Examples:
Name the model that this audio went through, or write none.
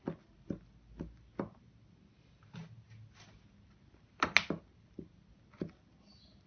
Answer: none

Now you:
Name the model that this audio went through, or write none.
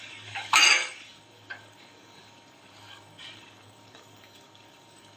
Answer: codec, DAC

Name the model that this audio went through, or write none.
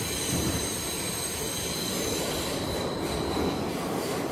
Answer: none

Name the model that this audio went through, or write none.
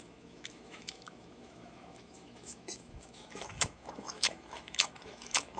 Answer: autoencoder, DAC-VAE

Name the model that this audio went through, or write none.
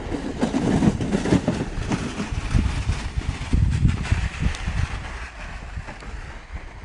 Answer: none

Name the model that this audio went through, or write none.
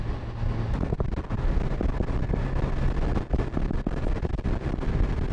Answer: none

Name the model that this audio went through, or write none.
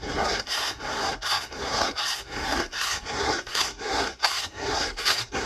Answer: codec, SNAC